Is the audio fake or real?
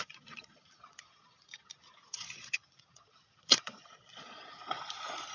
fake